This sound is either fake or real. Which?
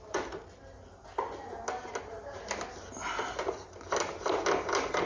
real